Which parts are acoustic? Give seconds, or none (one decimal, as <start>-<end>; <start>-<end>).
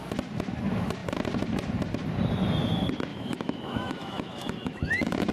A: 0.0-3.1